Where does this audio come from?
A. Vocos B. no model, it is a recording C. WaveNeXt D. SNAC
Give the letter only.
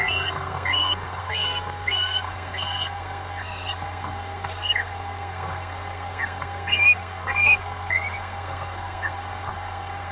D